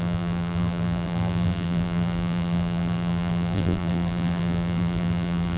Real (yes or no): no